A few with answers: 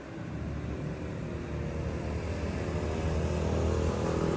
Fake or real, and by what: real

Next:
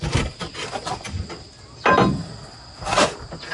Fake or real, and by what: real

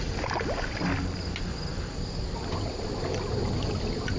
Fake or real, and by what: real